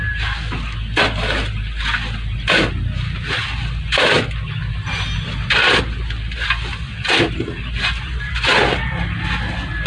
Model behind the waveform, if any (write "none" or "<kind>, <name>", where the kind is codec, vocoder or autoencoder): none